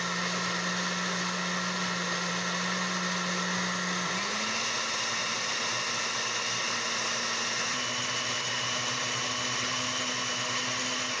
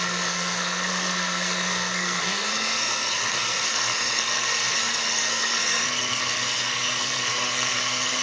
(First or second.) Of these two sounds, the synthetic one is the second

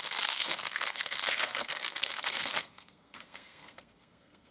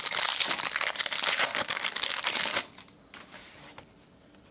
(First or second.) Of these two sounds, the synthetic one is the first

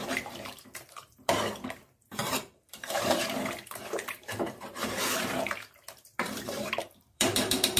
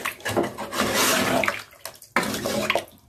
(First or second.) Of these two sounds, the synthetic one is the first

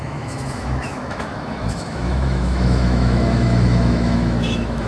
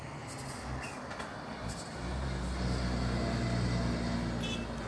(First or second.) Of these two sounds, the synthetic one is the first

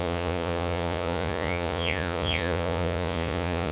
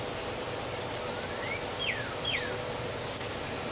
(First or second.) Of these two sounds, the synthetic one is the first